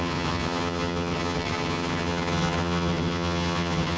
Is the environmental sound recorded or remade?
remade